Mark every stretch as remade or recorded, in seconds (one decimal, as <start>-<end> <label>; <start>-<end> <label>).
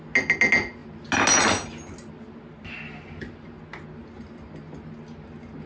0.0-5.7 recorded